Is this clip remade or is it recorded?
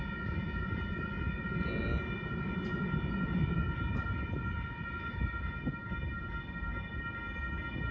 recorded